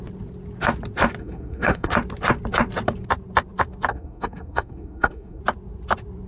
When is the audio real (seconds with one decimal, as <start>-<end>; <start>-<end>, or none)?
0.0-1.2; 1.9-3.9; 5.4-6.3